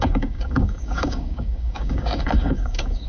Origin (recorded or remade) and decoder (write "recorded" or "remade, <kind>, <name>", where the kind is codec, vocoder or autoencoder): remade, codec, DAC